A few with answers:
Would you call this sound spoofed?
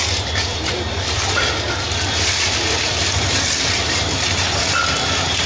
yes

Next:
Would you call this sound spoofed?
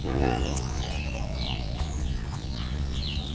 yes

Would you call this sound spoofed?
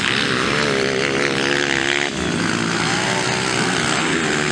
no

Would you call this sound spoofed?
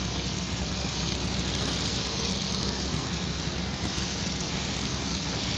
yes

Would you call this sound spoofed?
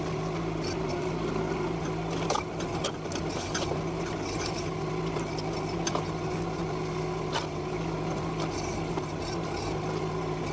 no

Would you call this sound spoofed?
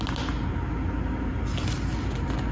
no